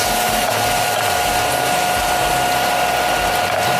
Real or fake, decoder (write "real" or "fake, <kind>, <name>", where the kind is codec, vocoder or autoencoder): real